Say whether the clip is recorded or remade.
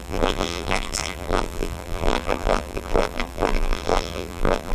remade